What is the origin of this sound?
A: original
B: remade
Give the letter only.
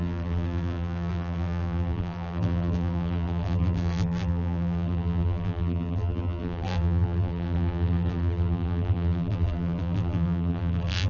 B